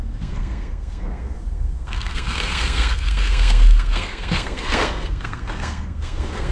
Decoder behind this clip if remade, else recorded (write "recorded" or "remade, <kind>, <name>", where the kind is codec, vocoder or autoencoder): remade, codec, SNAC